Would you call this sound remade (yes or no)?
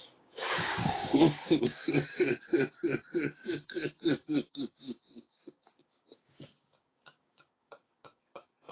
yes